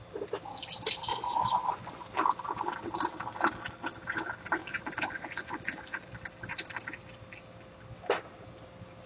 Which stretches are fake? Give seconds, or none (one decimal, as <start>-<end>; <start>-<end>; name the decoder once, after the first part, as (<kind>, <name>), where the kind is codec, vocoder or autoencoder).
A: 1.1-2.0 (vocoder, Vocos); 4.6-6.1